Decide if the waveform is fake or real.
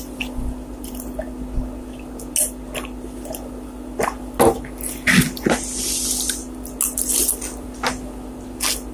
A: real